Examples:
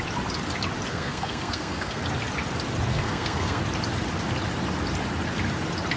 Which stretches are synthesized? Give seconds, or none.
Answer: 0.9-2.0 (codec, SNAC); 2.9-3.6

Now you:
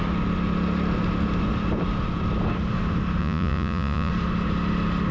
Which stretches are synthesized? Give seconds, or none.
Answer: 3.2-4.1 (vocoder, Vocos)

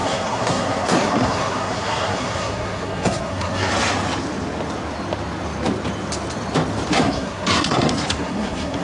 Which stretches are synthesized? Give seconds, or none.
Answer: 0.0-3.7 (codec, SNAC); 6.9-8.8

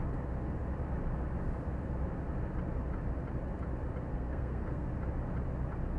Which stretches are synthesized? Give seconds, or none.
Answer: 4.1-4.9 (codec, SNAC)

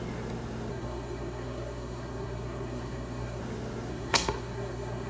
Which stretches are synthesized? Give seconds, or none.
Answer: 0.7-3.4 (codec, SNAC); 3.9-5.1

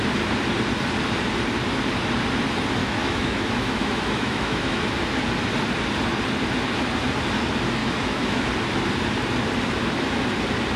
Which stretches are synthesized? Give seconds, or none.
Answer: 2.8-4.8 (autoencoder, DAC-VAE); 7.8-8.5